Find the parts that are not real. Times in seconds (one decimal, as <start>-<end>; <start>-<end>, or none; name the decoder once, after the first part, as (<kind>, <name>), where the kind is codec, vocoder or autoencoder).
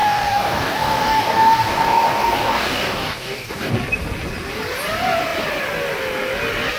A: 0.0-3.7 (codec, DAC)